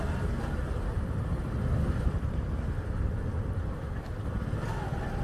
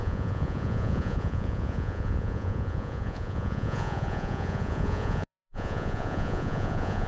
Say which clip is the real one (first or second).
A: first